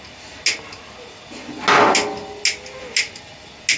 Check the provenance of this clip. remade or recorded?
recorded